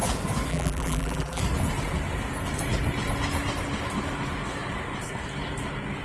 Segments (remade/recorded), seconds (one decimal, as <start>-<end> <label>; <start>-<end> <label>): 0.0-0.5 recorded; 0.5-1.4 remade; 1.4-6.0 recorded